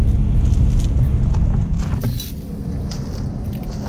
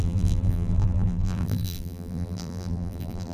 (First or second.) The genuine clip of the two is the first